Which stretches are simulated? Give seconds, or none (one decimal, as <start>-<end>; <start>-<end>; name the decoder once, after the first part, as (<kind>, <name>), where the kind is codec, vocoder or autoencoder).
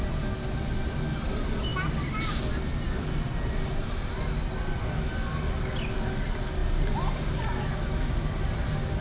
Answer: none